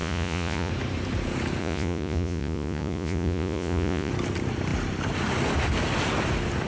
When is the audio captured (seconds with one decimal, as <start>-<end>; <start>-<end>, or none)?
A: 0.7-1.6; 4.1-6.7